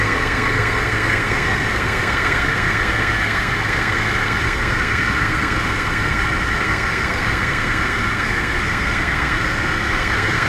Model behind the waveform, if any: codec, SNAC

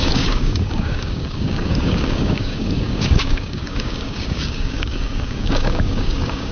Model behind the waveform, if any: codec, DAC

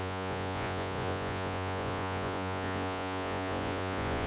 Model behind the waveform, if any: vocoder, Vocos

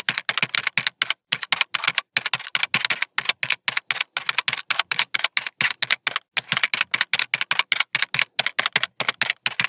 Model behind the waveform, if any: none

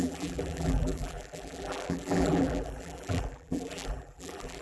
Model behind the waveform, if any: vocoder, BigVGAN v2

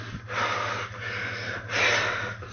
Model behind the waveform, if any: none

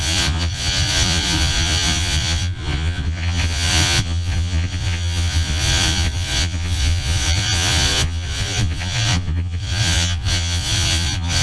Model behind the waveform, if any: vocoder, Vocos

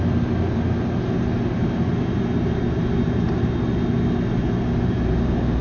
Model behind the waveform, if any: none